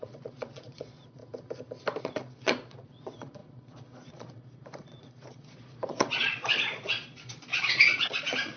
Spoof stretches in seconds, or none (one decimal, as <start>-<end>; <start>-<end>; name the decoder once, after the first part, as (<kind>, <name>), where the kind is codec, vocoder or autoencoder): 0.0-1.2 (vocoder, Vocos); 2.0-8.6